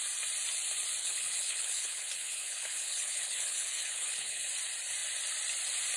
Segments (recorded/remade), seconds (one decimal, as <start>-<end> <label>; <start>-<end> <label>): 0.0-1.0 recorded; 1.0-4.4 remade; 4.4-6.0 recorded

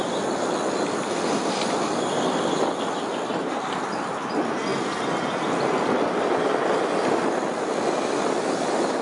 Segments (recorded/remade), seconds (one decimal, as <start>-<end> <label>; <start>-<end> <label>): 0.0-9.0 recorded

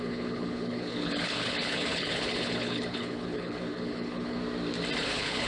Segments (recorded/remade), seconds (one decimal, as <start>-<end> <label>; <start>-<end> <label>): 0.0-4.4 remade; 4.4-5.0 recorded; 5.0-5.5 remade

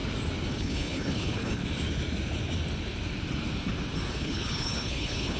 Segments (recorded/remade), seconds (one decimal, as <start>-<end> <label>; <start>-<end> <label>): 0.0-0.5 recorded; 0.5-1.6 remade; 1.6-4.1 recorded; 4.1-5.4 remade

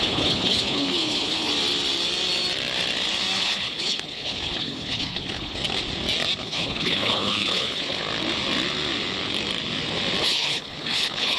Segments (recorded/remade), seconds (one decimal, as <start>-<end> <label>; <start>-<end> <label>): 0.0-1.5 remade; 1.5-3.4 recorded; 3.4-5.6 remade; 5.6-6.4 recorded; 6.4-8.0 remade; 8.0-10.2 recorded; 10.2-11.4 remade

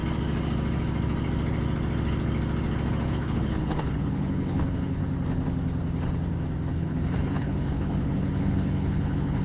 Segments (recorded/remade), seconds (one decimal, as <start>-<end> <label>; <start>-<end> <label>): 0.0-3.1 recorded; 3.1-5.0 remade; 5.0-6.7 recorded; 6.7-9.4 remade

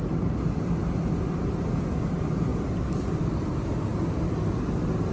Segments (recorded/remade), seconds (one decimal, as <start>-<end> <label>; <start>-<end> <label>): 0.0-5.1 recorded